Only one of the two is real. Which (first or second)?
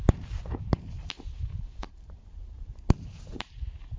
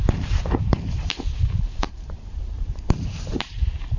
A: first